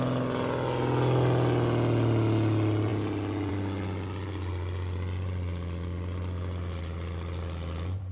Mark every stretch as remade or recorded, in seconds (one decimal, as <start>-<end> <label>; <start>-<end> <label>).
0.0-8.1 recorded